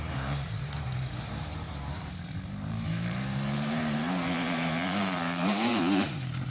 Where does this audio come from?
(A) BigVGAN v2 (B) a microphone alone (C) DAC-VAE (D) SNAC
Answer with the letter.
A